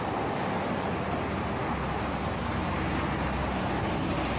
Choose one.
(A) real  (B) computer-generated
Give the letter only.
A